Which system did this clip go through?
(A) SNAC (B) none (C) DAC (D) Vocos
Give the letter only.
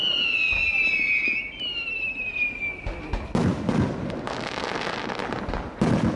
B